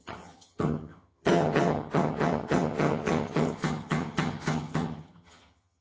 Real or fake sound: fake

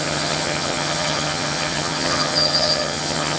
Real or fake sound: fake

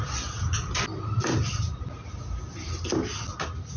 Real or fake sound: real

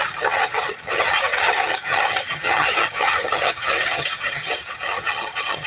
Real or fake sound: fake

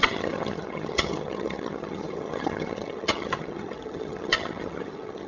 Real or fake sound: fake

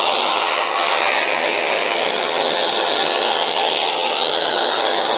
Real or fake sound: fake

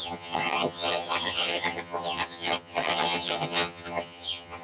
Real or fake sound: fake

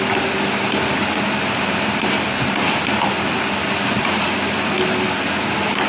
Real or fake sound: real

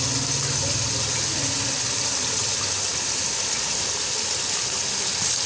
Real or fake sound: real